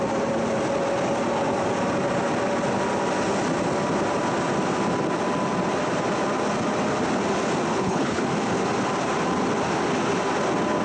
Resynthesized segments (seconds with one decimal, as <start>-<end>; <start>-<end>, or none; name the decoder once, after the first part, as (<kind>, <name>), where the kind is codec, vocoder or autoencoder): 7.7-8.2 (codec, HILCodec)